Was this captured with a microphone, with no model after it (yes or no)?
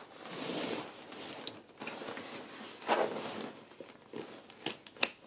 yes